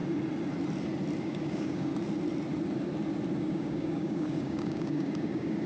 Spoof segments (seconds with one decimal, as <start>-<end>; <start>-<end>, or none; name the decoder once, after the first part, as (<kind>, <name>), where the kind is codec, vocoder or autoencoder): 1.2-1.9 (codec, DAC); 3.4-5.7